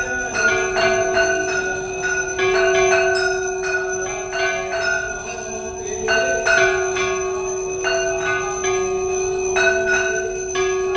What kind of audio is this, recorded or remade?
recorded